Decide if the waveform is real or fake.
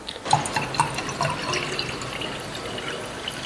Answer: real